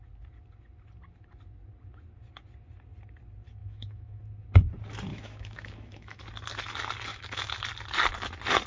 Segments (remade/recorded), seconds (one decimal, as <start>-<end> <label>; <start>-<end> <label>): 0.0-3.6 recorded; 3.6-4.2 remade; 4.2-5.1 recorded; 5.1-6.2 remade; 6.2-7.1 recorded; 7.1-7.6 remade; 7.6-8.7 recorded